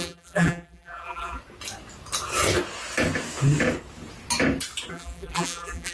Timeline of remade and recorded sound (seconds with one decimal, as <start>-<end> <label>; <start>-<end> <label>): 0.0-1.4 remade; 1.4-4.9 recorded; 4.9-5.9 remade